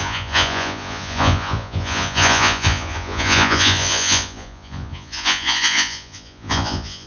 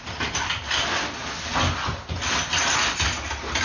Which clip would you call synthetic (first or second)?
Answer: first